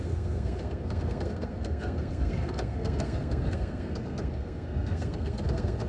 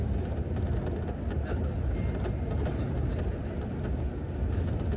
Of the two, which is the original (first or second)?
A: second